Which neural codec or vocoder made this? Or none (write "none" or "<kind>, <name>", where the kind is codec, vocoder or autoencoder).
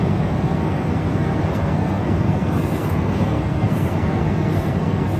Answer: codec, SNAC